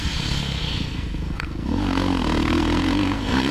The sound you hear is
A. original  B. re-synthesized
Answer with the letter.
B